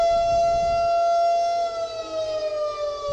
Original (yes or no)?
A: yes